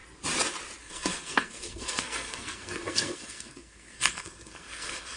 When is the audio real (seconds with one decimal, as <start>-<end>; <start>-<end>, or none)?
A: 0.0-0.8